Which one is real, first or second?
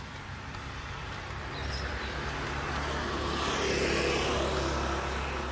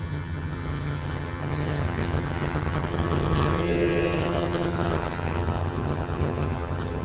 first